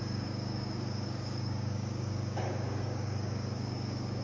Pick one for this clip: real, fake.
fake